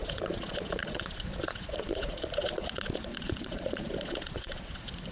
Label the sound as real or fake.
fake